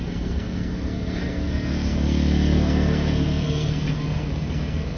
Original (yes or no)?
no